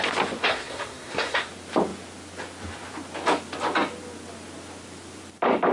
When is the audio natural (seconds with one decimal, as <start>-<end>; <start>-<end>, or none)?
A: 0.0-0.5; 1.5-5.7